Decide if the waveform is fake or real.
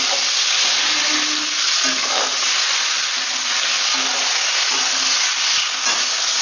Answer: real